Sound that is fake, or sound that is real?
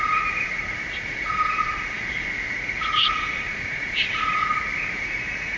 fake